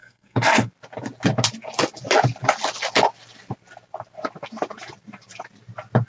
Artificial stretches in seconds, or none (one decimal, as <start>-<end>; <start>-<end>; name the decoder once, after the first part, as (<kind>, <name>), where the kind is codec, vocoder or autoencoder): 0.0-0.7 (codec, SNAC)